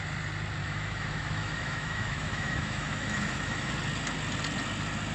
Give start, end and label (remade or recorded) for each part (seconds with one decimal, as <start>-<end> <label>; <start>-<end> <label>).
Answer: 0.0-0.6 recorded; 0.6-3.7 remade; 3.7-5.1 recorded